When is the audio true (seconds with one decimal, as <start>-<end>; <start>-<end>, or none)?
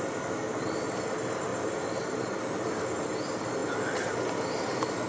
0.0-1.5; 2.9-3.6; 4.1-5.1